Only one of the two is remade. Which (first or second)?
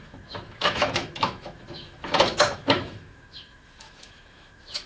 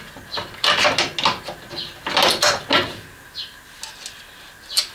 first